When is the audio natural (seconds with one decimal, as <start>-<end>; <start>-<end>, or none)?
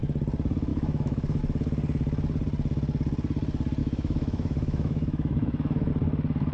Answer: 0.0-0.7; 1.4-3.8; 5.9-6.5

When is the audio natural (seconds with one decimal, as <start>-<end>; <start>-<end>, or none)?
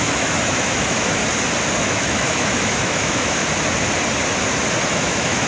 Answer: 1.2-1.8; 3.4-4.9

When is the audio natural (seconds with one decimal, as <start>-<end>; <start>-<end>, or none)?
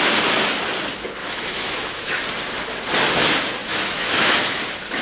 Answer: 0.0-1.2; 2.2-3.6; 4.6-5.0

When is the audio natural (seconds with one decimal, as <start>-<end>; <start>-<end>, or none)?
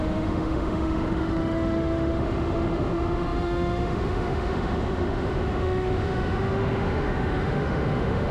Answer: none